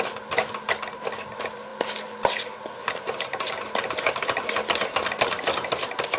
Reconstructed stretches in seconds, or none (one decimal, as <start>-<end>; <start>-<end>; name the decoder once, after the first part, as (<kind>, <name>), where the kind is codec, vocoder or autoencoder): none